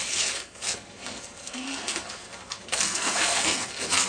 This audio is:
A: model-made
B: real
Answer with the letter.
A